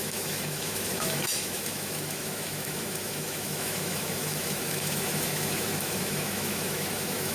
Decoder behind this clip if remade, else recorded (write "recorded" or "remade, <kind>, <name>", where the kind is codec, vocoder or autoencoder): remade, autoencoder, DAC-VAE